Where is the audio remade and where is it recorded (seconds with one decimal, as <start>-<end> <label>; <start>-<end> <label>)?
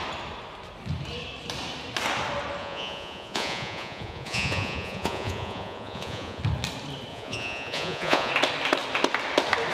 0.0-2.6 recorded; 2.6-6.4 remade; 6.4-7.1 recorded; 7.1-8.3 remade; 8.3-9.7 recorded